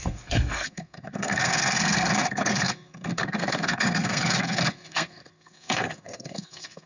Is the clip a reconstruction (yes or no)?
yes